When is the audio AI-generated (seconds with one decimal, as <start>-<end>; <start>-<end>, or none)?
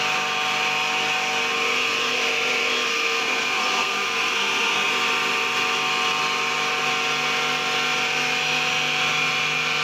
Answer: 2.9-4.9